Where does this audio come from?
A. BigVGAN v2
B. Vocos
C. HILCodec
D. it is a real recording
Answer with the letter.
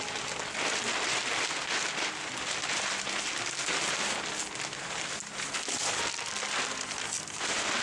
D